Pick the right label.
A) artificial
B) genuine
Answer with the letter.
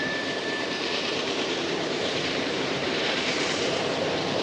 A